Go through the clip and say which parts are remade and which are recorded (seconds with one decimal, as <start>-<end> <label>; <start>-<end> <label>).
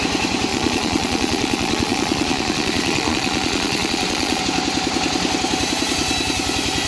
0.0-0.5 recorded; 0.5-4.4 remade; 4.4-6.9 recorded